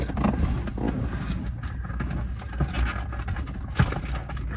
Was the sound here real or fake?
real